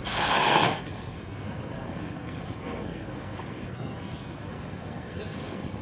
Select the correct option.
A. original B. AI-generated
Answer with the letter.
B